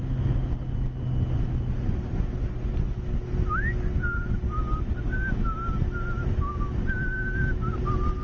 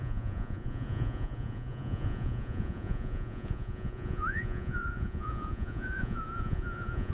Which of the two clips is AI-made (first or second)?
second